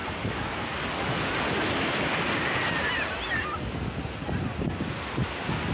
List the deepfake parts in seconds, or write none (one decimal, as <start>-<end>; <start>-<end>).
none